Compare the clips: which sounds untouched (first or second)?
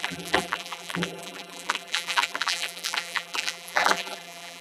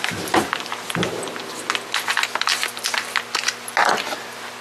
second